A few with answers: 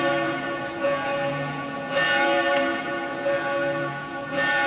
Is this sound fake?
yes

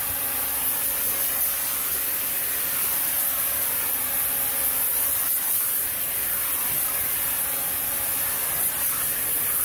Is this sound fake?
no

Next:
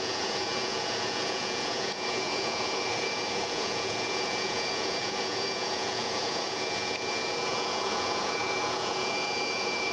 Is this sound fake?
yes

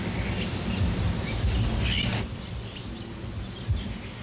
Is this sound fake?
no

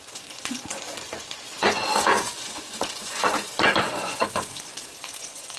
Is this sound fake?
yes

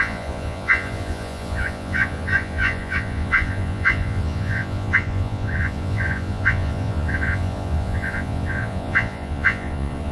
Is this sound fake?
yes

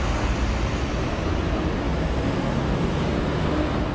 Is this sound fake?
no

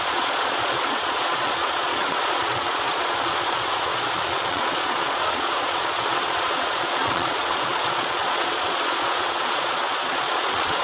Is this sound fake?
yes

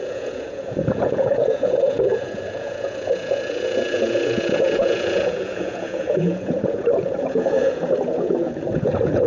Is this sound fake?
yes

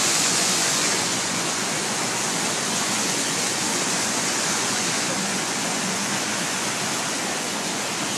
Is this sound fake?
yes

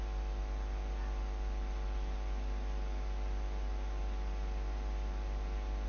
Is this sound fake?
no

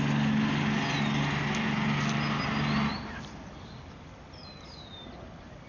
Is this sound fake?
no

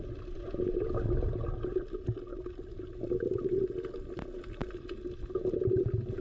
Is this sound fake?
no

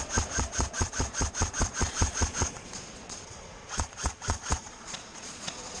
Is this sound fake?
yes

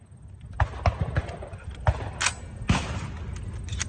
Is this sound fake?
no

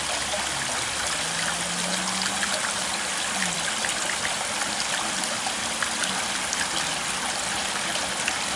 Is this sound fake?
no